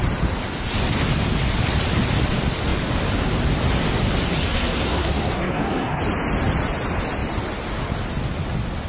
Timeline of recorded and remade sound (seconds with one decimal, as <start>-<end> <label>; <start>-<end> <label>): 0.0-4.5 recorded; 4.5-6.0 remade; 6.0-8.9 recorded

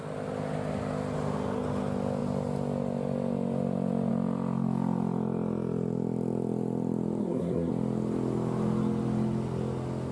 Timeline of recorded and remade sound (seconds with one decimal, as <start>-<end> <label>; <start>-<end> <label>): 0.0-7.2 recorded; 7.2-7.7 remade; 7.7-10.1 recorded

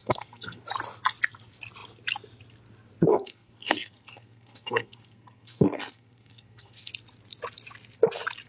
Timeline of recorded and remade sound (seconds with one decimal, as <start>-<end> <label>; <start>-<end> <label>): 0.0-0.6 remade; 0.6-3.1 recorded; 3.1-6.9 remade; 6.9-8.5 recorded

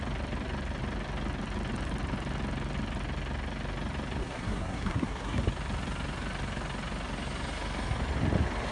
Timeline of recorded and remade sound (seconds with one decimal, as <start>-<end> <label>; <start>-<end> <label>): 0.0-4.2 recorded; 4.2-5.4 remade; 5.4-8.7 recorded

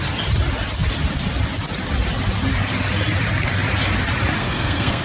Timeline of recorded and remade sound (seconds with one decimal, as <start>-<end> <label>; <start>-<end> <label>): 0.0-4.4 recorded; 4.4-5.0 remade

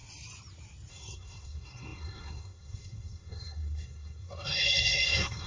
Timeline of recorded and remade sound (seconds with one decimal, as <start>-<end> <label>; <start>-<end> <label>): 0.0-0.9 recorded; 0.9-5.5 remade

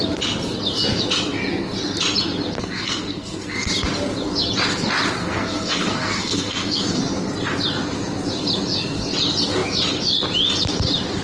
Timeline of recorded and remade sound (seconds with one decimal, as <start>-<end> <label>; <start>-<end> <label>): 0.0-2.6 recorded; 2.6-3.7 remade; 3.7-5.2 recorded; 5.2-7.0 remade; 7.0-11.2 recorded

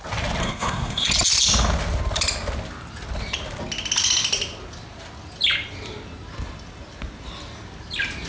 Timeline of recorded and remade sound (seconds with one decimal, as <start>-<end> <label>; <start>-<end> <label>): 0.0-0.4 recorded; 0.4-1.1 remade; 1.1-8.3 recorded